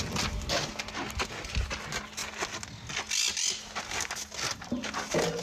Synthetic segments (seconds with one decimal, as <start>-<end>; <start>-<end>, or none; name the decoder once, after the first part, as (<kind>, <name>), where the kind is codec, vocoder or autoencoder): none